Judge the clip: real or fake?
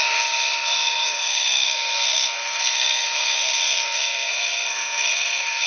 fake